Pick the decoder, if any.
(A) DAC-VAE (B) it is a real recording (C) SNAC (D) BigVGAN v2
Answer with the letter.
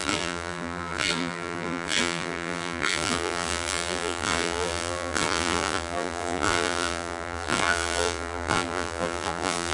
D